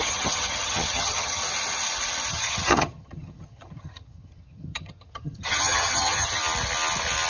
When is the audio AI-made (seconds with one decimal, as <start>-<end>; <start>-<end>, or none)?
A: 0.0-1.4; 2.3-6.4